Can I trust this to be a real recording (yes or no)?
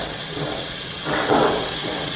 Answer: no